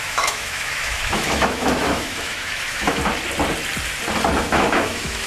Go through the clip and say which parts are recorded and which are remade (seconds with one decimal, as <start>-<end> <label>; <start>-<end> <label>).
0.0-3.0 remade; 3.0-4.4 recorded; 4.4-5.3 remade

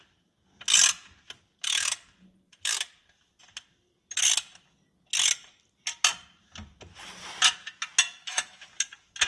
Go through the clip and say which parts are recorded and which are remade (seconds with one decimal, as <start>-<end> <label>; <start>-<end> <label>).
0.0-8.2 recorded; 8.2-8.7 remade; 8.7-9.3 recorded